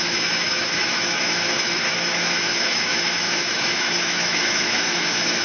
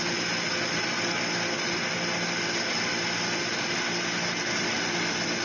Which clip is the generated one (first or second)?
first